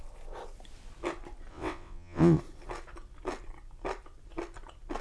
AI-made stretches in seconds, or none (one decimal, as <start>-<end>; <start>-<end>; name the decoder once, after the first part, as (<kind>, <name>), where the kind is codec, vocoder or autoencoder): 1.5-2.4 (vocoder, WaveNeXt)